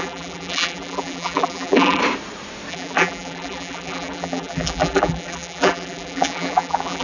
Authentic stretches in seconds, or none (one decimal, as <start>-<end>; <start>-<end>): 2.0-2.7